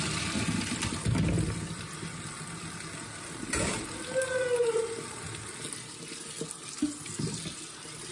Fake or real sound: real